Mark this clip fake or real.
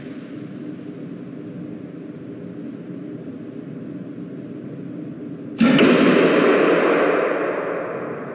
real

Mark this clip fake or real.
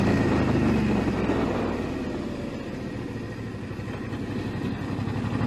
real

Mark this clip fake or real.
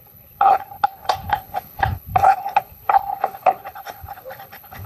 fake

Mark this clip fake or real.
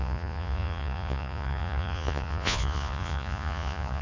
fake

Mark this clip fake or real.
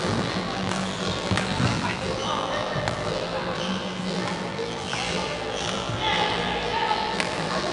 fake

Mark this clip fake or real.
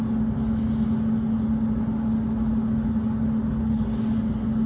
real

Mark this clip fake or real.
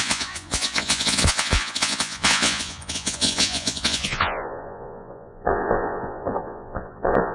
fake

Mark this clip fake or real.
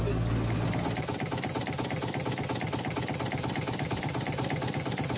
real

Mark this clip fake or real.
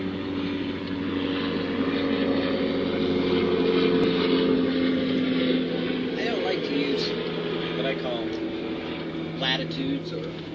real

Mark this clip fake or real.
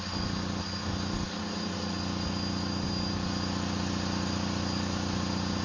real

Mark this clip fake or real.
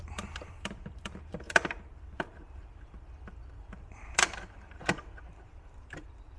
fake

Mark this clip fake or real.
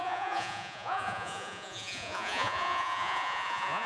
fake